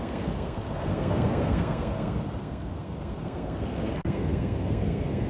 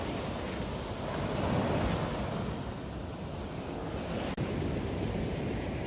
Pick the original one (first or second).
second